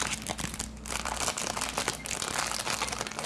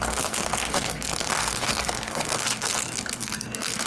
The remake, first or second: second